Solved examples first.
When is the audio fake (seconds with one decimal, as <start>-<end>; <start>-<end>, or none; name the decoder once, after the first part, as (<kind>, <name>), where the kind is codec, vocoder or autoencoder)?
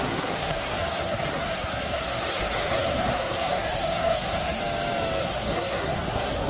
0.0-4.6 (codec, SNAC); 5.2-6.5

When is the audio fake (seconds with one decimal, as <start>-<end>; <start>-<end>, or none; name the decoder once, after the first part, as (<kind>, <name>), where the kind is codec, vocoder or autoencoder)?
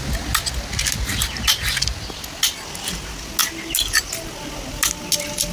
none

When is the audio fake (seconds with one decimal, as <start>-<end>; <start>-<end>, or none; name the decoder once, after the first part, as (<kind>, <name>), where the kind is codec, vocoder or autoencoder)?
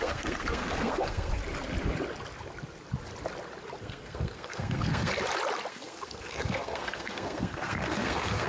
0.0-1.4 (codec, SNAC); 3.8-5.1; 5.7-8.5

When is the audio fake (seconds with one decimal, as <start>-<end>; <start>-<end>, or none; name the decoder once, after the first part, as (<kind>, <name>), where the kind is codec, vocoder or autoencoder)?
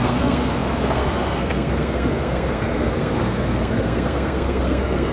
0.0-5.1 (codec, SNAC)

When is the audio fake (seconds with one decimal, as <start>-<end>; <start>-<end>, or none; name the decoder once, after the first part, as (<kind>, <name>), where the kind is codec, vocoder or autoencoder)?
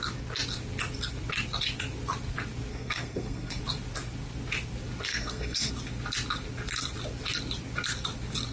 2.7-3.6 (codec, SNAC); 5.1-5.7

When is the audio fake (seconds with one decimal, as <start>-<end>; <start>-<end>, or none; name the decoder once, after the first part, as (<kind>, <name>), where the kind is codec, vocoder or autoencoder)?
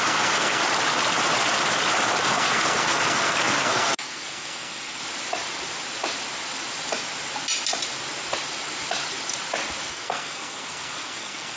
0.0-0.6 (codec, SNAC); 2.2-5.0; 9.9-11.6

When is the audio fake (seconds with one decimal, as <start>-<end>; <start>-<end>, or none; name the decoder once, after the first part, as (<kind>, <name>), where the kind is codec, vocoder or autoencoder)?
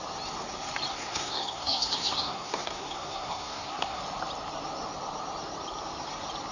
0.9-4.0 (codec, SNAC)